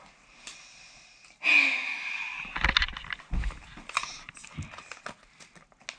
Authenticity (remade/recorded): recorded